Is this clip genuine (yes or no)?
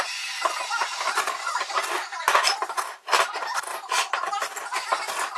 yes